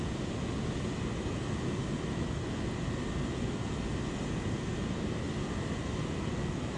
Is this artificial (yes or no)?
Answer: no